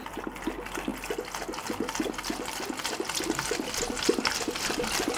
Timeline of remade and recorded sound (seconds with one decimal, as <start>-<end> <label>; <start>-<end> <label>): 0.0-5.2 recorded